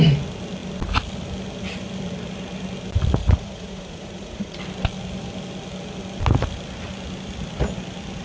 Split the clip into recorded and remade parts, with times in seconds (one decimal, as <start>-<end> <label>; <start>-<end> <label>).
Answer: 0.0-3.2 recorded; 3.2-4.6 remade; 4.6-8.2 recorded